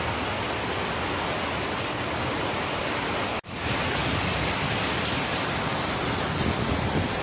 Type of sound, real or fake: real